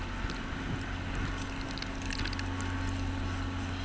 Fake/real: real